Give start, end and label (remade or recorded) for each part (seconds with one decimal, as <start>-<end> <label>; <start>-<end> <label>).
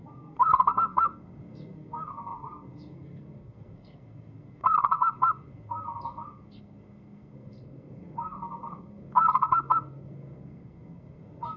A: 0.0-11.6 remade